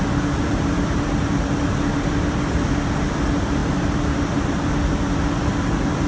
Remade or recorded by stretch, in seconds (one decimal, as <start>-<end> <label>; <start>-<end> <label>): 0.0-6.1 recorded